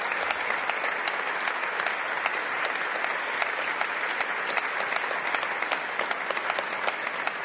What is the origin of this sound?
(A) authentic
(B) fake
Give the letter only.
A